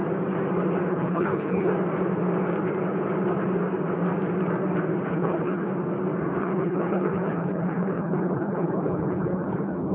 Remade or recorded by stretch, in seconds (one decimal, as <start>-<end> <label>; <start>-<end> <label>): 0.0-0.9 recorded; 0.9-1.7 remade; 1.7-5.1 recorded; 5.1-5.7 remade; 5.7-6.4 recorded; 6.4-9.9 remade